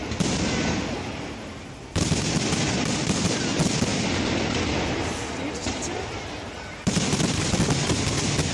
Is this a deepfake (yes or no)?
no